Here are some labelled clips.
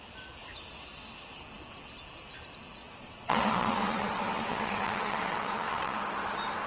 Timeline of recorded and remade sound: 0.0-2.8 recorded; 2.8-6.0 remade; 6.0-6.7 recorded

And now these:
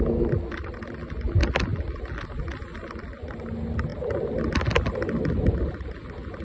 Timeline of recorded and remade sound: 0.0-6.4 recorded